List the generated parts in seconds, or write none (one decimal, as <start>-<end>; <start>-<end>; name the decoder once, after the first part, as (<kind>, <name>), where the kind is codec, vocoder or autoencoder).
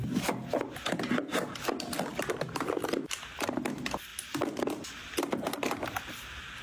2.1-3.6 (vocoder, BigVGAN v2)